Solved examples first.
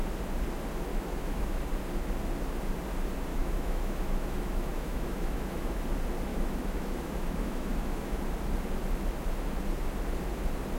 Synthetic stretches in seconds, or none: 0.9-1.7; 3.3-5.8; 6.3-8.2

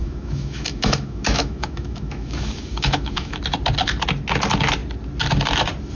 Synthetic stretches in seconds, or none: 0.0-3.4

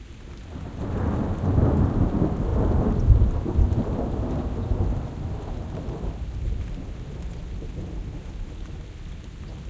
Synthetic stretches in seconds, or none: none

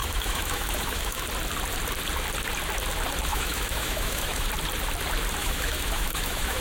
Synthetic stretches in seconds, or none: 0.0-1.2; 3.3-4.5; 5.4-6.6

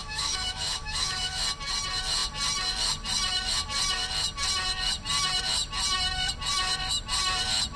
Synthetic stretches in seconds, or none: 0.0-1.4

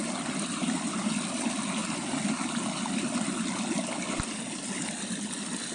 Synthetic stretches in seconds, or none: none